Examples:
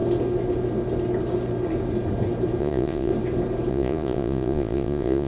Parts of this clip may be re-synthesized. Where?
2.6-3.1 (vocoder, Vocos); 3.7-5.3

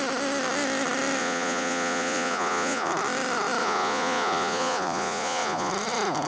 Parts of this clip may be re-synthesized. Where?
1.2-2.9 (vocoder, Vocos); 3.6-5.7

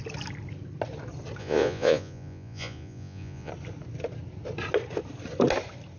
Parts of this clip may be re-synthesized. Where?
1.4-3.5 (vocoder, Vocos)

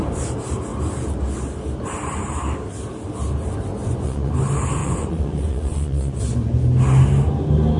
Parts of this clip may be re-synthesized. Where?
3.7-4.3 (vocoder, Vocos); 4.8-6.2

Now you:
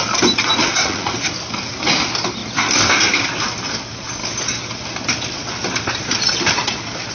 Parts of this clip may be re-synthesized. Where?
0.6-1.1 (vocoder, Vocos)

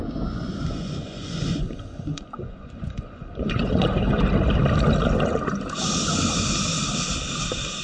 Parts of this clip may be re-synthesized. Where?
0.0-4.3 (vocoder, Vocos)

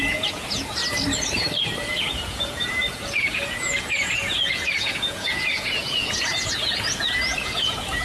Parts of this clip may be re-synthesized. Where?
0.0-0.8 (vocoder, Vocos); 1.9-8.0